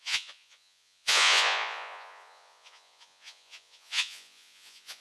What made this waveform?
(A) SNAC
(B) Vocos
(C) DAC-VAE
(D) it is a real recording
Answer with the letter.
B